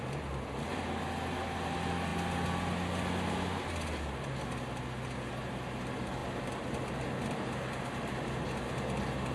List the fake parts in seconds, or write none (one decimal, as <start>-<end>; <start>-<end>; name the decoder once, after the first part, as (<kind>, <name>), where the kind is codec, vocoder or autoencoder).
none